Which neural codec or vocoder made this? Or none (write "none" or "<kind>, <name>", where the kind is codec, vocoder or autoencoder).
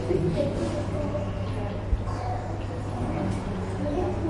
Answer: none